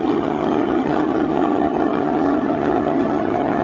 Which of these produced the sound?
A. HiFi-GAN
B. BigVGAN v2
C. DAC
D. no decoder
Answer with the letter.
A